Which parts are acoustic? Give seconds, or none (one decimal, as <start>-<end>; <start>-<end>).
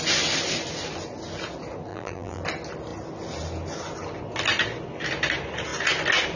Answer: 0.0-1.9; 2.4-6.4